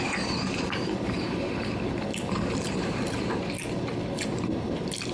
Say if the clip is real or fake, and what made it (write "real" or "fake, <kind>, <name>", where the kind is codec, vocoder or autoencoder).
fake, vocoder, BigVGAN v2